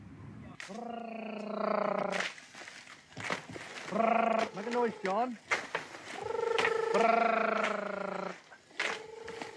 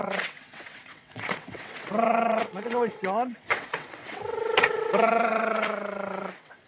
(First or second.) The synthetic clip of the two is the second